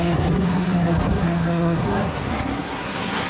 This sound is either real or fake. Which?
fake